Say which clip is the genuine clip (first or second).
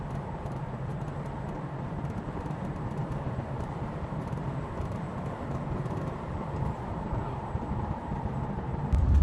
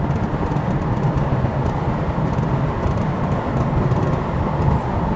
second